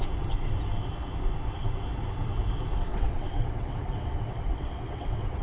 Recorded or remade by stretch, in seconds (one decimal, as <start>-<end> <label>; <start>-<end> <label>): 0.0-2.9 recorded; 2.9-5.4 remade